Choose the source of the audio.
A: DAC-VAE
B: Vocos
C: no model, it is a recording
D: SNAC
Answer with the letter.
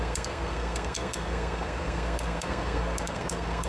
D